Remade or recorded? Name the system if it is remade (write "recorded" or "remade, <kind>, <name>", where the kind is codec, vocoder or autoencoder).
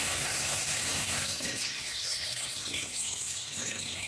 remade, codec, SNAC